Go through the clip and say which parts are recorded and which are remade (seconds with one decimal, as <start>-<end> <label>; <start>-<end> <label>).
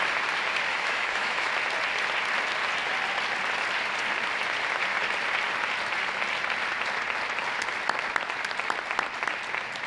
0.0-0.7 recorded; 0.7-1.5 remade; 1.5-9.9 recorded